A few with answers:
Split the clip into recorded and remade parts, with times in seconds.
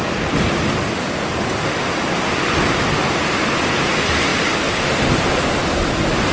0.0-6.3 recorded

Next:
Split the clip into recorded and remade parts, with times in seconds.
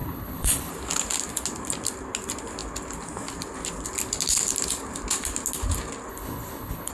0.0-0.7 remade; 0.7-6.1 recorded; 6.1-6.9 remade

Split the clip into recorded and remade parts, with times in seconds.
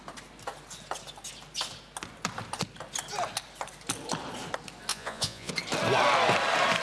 0.0-4.9 recorded; 4.9-5.5 remade; 5.5-6.8 recorded